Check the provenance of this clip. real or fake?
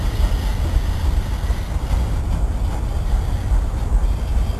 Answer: real